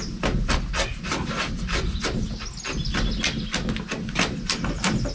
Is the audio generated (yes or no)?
no